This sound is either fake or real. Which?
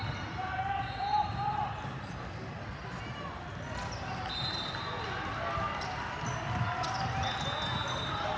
real